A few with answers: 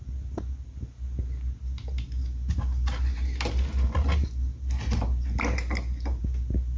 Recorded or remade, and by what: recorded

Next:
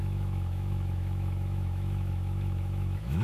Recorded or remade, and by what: remade, autoencoder, DAC-VAE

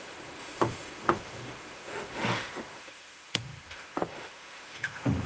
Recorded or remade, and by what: remade, autoencoder, DAC-VAE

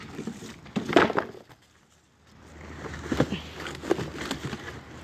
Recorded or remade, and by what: recorded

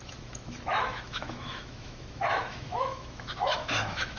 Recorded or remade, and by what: remade, autoencoder, DAC-VAE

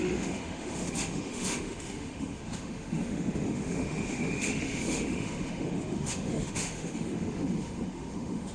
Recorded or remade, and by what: remade, autoencoder, DAC-VAE